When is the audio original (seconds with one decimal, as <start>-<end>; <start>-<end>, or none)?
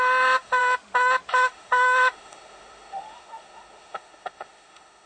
0.6-1.3